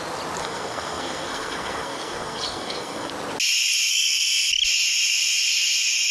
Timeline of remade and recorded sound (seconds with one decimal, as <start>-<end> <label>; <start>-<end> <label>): 0.0-0.4 recorded; 0.4-3.1 remade; 3.1-3.9 recorded; 3.9-4.5 remade; 4.5-6.1 recorded